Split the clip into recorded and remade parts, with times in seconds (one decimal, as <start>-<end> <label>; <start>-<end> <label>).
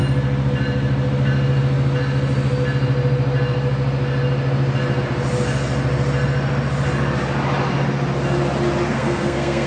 0.0-8.9 recorded; 8.9-9.7 remade